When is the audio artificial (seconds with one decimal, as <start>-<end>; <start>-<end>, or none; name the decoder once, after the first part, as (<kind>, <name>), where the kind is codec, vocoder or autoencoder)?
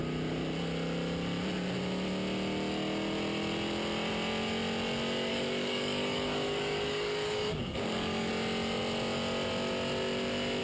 5.3-8.3 (codec, DAC)